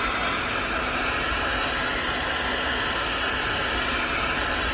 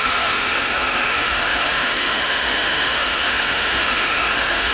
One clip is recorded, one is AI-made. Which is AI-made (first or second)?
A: second